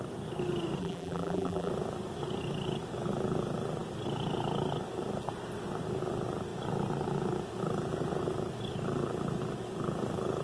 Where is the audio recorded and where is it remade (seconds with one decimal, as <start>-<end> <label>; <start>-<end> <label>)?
0.0-0.8 recorded; 0.8-1.7 remade; 1.7-10.4 recorded